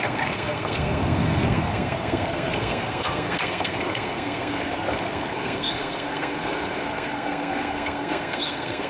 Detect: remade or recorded remade